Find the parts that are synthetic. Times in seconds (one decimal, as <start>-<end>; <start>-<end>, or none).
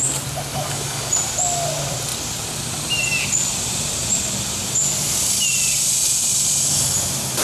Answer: 0.5-1.1